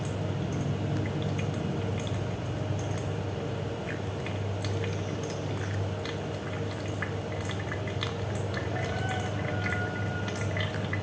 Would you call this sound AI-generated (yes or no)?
no